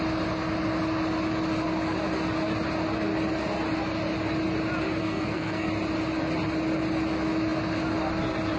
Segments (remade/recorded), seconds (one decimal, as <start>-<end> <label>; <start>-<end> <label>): 0.0-5.0 recorded; 5.0-5.7 remade; 5.7-8.6 recorded